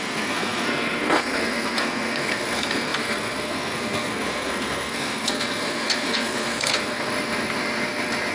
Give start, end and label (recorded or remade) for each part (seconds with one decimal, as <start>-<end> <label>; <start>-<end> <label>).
0.0-7.1 remade; 7.1-8.3 recorded